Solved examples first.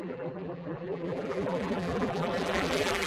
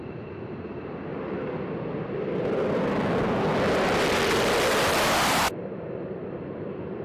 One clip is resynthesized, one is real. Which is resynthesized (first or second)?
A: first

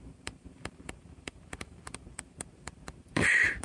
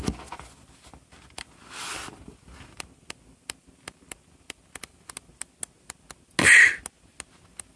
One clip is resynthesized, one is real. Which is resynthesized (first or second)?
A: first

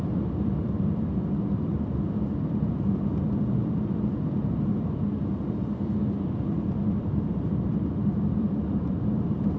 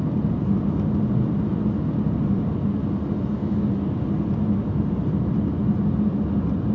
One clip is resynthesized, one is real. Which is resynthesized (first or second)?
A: first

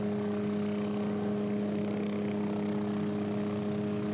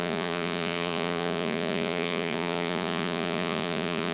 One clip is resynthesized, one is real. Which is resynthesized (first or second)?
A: second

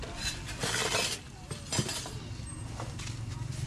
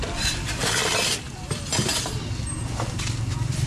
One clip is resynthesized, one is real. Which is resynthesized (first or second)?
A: second